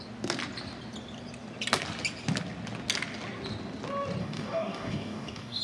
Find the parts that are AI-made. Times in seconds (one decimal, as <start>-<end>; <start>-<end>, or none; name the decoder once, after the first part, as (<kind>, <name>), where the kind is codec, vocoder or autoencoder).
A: 4.2-5.6 (codec, DAC)